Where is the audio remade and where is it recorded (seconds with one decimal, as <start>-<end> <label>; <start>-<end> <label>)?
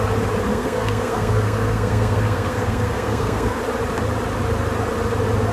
0.0-0.5 recorded; 0.5-3.6 remade; 3.6-5.5 recorded